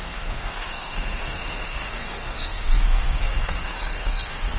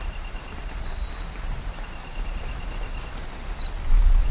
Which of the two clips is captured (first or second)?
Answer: second